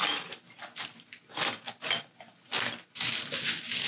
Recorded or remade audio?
recorded